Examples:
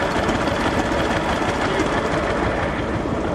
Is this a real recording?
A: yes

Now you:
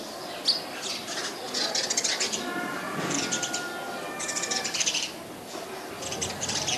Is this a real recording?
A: yes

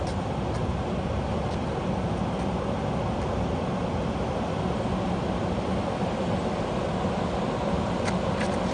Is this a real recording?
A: yes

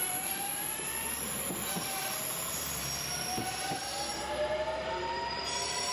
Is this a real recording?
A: no